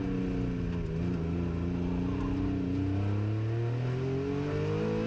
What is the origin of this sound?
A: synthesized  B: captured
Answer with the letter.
B